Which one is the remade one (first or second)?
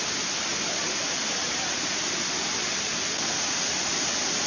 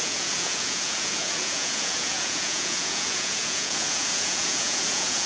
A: second